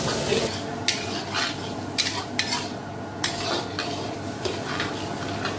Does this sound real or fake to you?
real